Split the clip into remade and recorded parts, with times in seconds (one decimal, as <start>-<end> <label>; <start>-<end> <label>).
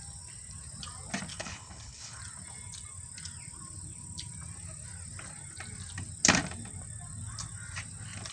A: 0.0-1.3 recorded; 1.3-2.2 remade; 2.2-8.3 recorded